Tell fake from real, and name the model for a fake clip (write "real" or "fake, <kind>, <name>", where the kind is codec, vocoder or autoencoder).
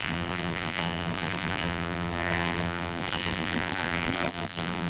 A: fake, vocoder, BigVGAN v2